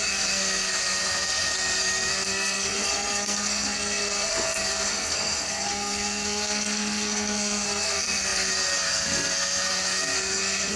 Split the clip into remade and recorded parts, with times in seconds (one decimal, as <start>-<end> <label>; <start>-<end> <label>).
0.0-10.8 remade